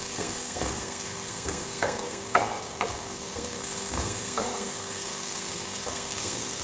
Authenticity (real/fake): fake